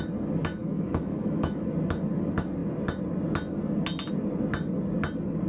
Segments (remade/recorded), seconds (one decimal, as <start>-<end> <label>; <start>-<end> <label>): 0.0-0.6 recorded; 0.6-1.6 remade; 1.6-5.5 recorded